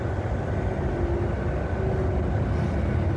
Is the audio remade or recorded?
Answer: recorded